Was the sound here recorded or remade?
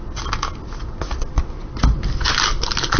recorded